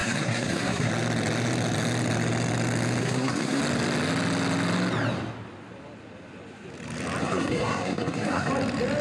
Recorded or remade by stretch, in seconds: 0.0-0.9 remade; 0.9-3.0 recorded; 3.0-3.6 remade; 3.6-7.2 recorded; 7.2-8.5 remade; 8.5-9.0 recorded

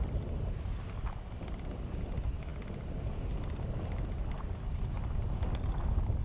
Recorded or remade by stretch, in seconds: 0.0-6.2 recorded

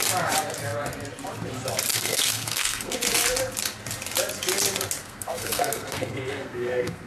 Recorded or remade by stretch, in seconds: 0.0-1.9 recorded; 1.9-3.0 remade; 3.0-5.0 recorded; 5.0-7.1 remade